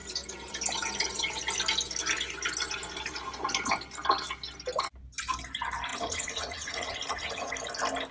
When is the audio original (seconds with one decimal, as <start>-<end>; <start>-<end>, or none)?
0.0-5.9; 7.5-8.1